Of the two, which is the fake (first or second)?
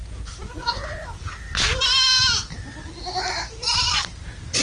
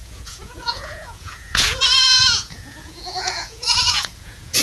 second